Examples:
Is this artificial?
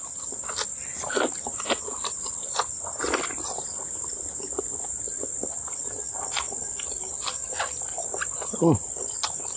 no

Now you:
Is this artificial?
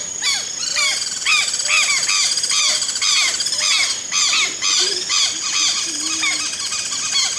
no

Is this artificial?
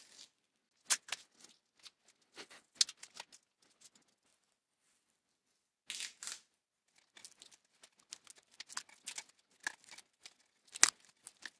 no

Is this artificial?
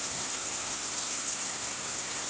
yes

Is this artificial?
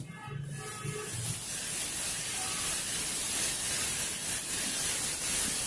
no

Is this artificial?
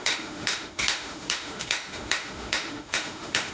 yes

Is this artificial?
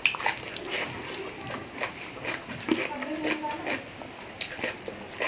no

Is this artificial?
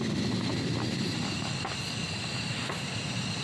no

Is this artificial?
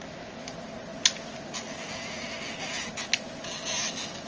no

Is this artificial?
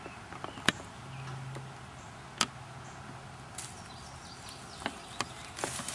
no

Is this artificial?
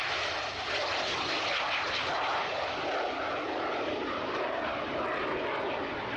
no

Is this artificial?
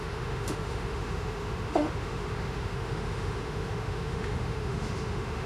yes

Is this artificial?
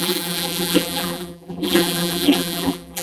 yes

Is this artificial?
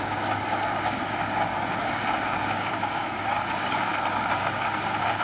yes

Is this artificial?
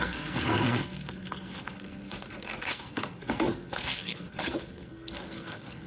yes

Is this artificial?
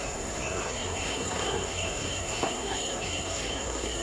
yes